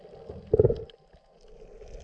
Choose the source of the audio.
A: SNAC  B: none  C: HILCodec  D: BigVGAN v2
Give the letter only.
B